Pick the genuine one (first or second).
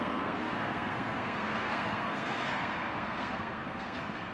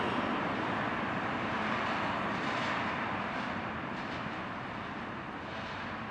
second